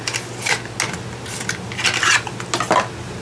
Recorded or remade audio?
recorded